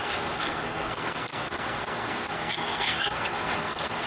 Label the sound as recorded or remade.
remade